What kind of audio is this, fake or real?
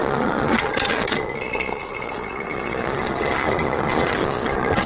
fake